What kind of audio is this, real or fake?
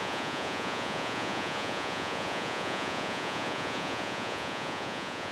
fake